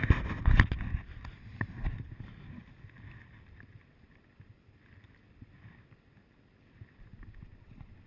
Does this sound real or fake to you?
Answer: real